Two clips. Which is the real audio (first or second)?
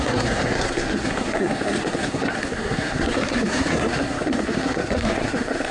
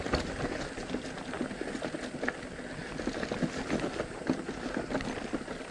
second